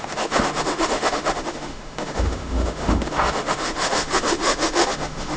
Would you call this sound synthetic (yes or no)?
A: yes